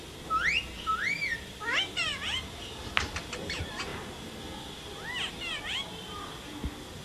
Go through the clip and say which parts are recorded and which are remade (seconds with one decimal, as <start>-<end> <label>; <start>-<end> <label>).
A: 0.0-0.9 recorded; 0.9-2.9 remade; 2.9-7.0 recorded